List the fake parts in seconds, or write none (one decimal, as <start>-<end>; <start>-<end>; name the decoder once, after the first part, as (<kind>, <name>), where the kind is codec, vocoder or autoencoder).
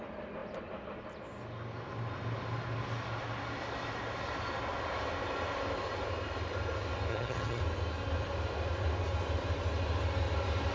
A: 7.1-7.6 (vocoder, HiFi-GAN)